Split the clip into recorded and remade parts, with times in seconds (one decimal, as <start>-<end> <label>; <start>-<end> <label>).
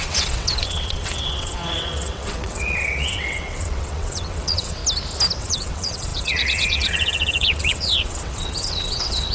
0.0-4.8 remade; 4.8-5.4 recorded; 5.4-9.3 remade